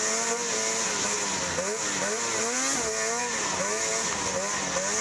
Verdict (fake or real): real